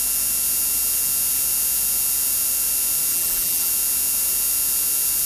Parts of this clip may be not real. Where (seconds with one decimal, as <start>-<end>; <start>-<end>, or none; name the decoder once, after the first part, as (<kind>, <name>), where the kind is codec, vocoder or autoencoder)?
3.1-3.7 (vocoder, BigVGAN v2)